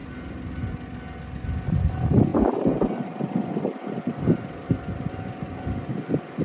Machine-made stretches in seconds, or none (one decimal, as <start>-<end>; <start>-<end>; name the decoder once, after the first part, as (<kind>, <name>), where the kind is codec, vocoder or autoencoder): 0.0-0.6 (vocoder, BigVGAN v2); 2.3-5.1